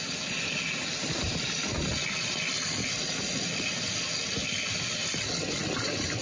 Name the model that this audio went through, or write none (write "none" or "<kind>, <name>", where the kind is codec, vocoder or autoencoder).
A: none